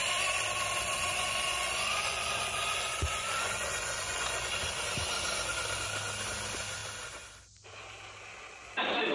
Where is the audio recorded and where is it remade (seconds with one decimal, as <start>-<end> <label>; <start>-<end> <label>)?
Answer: 0.0-0.9 recorded; 0.9-4.5 remade; 4.5-9.1 recorded